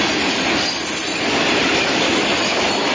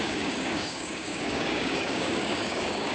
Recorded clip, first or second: first